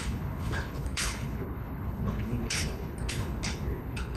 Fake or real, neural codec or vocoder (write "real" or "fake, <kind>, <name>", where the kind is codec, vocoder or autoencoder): fake, codec, HILCodec